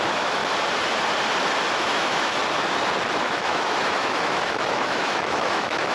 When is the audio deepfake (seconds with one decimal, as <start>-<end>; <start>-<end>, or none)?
0.0-0.4; 1.7-2.4; 3.1-5.9